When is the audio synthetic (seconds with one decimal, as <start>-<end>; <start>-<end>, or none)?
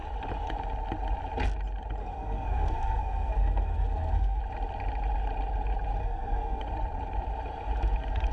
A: 2.0-4.4; 6.0-6.6